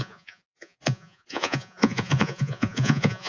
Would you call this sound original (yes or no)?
no